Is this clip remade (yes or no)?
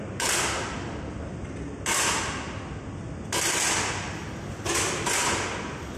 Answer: no